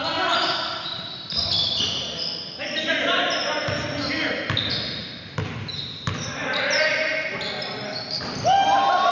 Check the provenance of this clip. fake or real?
real